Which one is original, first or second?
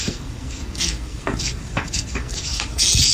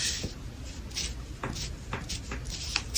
second